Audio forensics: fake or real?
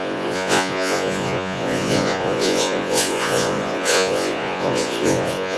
fake